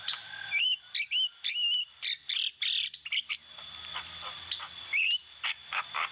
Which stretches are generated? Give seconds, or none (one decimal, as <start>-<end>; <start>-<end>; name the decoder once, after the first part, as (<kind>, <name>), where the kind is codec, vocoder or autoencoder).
none